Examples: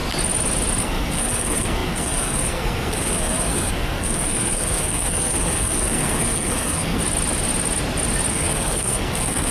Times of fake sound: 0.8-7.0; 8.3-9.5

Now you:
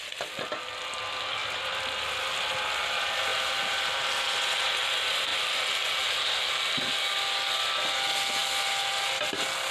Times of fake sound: 1.4-2.0; 5.3-6.8; 8.4-8.9

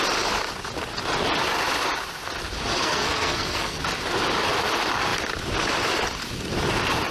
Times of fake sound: 2.8-3.8

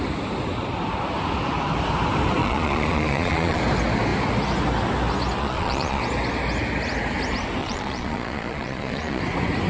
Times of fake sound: 2.4-3.6; 5.4-6.0; 7.6-9.2

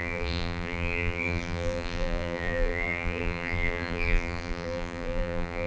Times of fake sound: 0.0-5.7

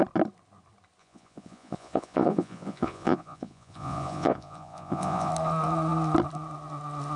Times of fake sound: 1.0-5.3